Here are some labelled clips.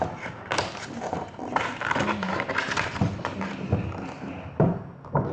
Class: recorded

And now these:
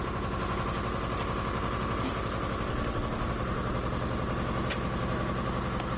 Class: recorded